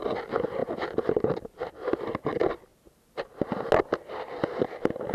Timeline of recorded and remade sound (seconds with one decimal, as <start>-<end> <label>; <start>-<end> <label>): 0.0-0.6 recorded; 0.6-1.7 remade; 1.7-5.1 recorded